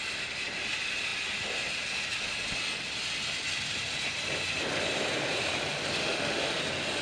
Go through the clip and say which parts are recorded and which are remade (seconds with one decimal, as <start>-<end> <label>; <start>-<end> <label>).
0.0-6.0 recorded; 6.0-6.6 remade; 6.6-7.0 recorded